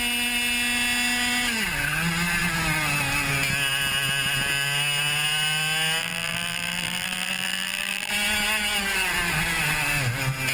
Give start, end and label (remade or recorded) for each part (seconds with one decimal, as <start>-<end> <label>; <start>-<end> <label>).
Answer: 0.0-6.0 recorded; 6.0-8.1 remade; 8.1-10.5 recorded